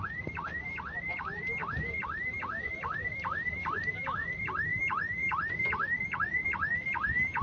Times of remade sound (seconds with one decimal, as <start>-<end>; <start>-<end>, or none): 0.0-7.4